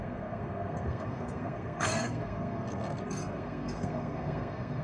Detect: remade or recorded remade